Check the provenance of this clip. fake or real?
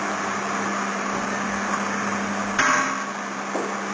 real